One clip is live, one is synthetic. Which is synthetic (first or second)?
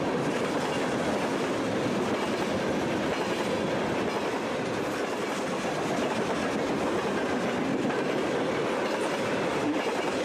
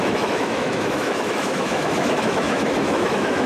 second